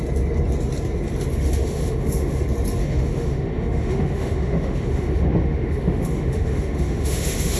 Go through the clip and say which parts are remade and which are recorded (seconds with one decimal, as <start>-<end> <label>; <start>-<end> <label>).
0.0-1.3 recorded; 1.3-2.4 remade; 2.4-2.8 recorded; 2.8-7.6 remade